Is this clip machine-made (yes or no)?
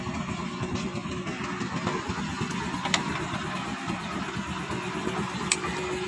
no